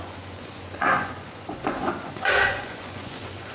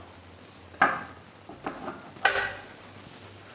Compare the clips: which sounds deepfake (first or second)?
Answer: first